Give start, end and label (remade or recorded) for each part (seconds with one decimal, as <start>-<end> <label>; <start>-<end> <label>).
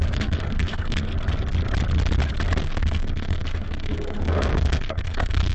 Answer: 0.0-1.1 remade; 1.1-2.6 recorded; 2.6-5.5 remade